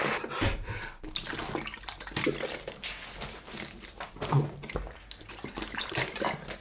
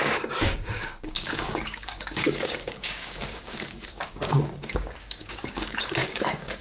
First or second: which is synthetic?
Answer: second